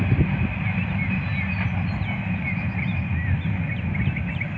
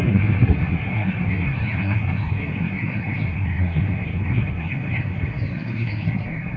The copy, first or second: second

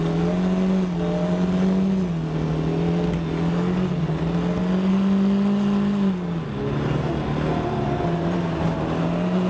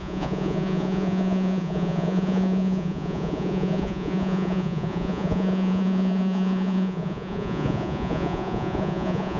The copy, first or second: second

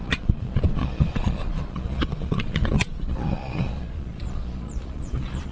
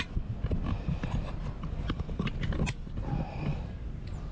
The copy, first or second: first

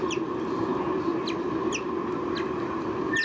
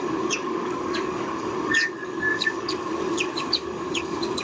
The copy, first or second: second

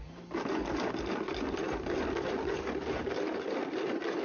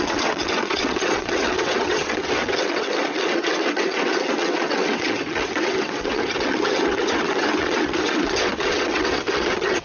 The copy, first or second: second